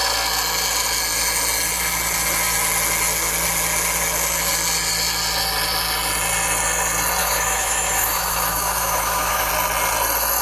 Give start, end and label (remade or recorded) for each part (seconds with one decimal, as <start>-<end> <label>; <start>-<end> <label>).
0.0-7.2 recorded; 7.2-9.5 remade; 9.5-10.4 recorded

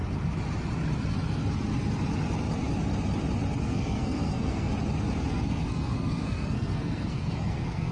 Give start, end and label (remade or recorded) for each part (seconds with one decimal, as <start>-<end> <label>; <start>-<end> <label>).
0.0-3.6 recorded; 3.6-4.7 remade; 4.7-5.3 recorded; 5.3-7.9 remade

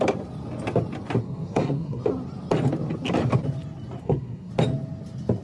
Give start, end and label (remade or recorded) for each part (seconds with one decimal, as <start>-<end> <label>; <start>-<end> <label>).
0.0-1.2 recorded; 1.2-2.0 remade; 2.0-4.0 recorded; 4.0-4.5 remade; 4.5-5.4 recorded